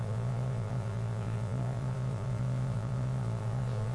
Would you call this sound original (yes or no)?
no